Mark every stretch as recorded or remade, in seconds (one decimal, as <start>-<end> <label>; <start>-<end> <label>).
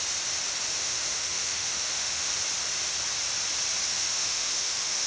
0.0-0.8 recorded; 0.8-2.3 remade; 2.3-3.9 recorded; 3.9-5.1 remade